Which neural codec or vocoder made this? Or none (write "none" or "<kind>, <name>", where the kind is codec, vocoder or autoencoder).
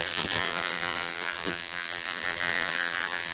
vocoder, BigVGAN v2